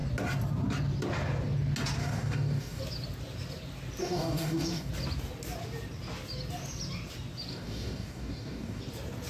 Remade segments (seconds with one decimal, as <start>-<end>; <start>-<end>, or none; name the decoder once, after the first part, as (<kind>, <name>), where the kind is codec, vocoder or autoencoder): 2.0-2.8 (codec, DAC); 4.0-4.9; 7.5-8.8

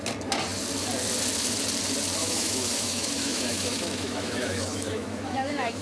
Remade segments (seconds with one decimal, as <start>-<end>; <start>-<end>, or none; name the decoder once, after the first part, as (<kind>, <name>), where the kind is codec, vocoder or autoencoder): 2.2-5.8 (autoencoder, DAC-VAE)